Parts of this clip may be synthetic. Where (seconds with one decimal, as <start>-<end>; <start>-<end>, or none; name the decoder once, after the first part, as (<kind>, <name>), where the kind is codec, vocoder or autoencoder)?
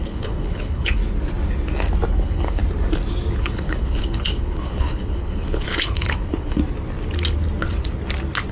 0.0-1.0 (codec, HILCodec); 2.1-2.6; 3.4-6.6